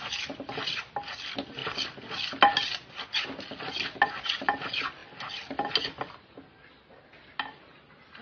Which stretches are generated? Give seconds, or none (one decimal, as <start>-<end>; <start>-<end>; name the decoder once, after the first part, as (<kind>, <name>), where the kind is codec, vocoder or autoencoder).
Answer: none